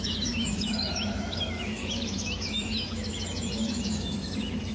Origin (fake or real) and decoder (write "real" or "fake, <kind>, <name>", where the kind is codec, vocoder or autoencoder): fake, autoencoder, DAC-VAE